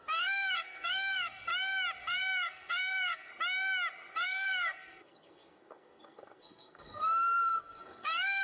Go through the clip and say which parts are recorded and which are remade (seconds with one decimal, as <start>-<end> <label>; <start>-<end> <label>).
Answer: 0.0-1.5 remade; 1.5-2.0 recorded; 2.0-3.3 remade; 3.3-4.1 recorded; 4.1-8.4 remade